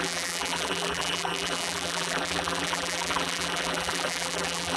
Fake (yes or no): yes